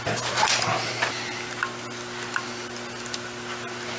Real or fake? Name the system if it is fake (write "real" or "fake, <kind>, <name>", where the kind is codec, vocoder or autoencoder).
real